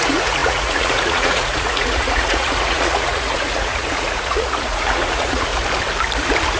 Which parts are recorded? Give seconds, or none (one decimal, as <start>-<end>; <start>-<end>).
5.5-6.6